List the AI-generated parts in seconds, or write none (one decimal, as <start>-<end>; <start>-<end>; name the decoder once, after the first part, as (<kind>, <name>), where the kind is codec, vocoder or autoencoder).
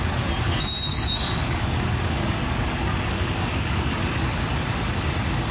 0.9-4.2 (codec, DAC)